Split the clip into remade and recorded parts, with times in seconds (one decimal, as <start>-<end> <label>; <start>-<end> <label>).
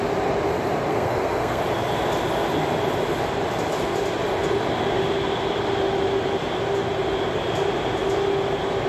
0.0-0.9 recorded; 0.9-1.6 remade; 1.6-8.9 recorded